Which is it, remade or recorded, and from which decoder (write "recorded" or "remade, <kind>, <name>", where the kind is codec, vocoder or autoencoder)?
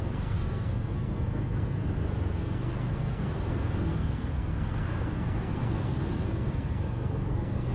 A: remade, codec, SNAC